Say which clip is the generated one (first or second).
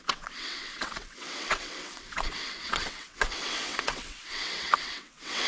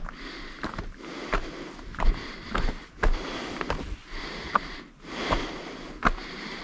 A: first